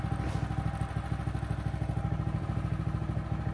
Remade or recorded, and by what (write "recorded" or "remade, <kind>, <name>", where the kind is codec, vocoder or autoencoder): recorded